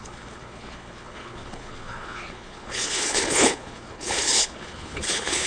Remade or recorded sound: remade